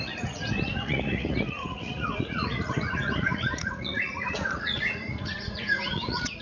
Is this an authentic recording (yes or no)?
no